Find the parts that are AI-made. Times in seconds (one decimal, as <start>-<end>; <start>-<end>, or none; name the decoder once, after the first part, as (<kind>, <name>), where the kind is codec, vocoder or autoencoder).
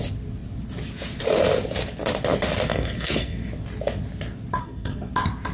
2.7-3.5 (codec, SNAC); 4.6-5.1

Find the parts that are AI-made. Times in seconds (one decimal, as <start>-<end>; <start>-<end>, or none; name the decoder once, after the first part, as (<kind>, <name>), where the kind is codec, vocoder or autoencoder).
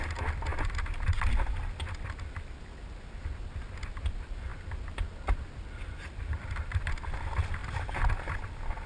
none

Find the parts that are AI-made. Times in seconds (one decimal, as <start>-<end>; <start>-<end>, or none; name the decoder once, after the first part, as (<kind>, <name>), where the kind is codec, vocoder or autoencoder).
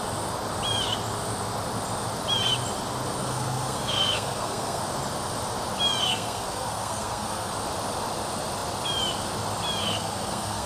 3.2-4.8 (codec, SNAC); 6.0-7.5; 9.8-10.7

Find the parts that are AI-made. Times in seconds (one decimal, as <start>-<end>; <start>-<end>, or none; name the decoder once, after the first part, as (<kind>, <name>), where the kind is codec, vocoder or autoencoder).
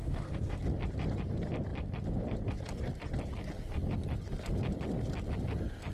0.0-0.6 (codec, SNAC)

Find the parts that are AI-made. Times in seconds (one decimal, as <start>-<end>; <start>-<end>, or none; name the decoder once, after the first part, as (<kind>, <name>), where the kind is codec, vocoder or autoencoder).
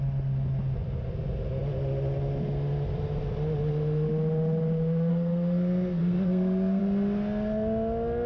5.1-6.8 (codec, SNAC)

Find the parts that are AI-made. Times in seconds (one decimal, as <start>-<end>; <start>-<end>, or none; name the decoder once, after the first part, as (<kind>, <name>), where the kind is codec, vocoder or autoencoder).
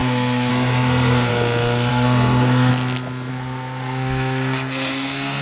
0.0-1.3 (codec, SNAC); 1.9-2.7; 3.3-5.4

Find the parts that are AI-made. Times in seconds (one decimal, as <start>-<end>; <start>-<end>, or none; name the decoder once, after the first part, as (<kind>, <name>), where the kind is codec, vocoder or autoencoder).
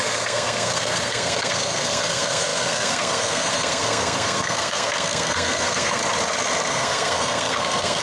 0.0-6.0 (codec, SNAC); 6.7-8.0